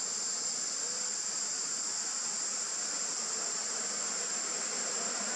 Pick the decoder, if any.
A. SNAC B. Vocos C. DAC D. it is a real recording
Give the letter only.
D